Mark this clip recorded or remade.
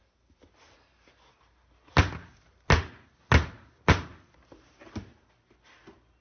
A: recorded